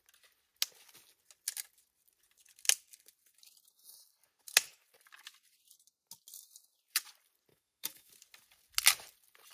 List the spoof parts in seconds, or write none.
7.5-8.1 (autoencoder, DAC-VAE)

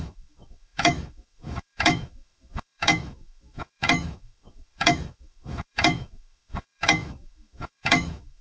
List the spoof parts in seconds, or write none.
0.0-8.4 (autoencoder, DAC-VAE)

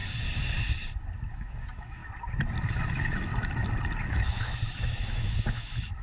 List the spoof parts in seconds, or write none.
1.3-2.0 (autoencoder, DAC-VAE); 2.6-3.3; 4.1-6.0

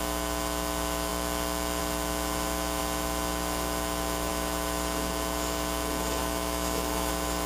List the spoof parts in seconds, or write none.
6.2-7.1 (autoencoder, DAC-VAE)